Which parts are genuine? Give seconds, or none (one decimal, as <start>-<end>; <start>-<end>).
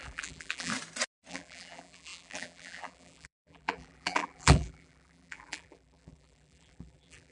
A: 0.7-1.3